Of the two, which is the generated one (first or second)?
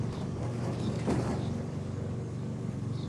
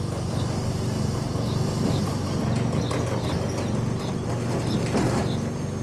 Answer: first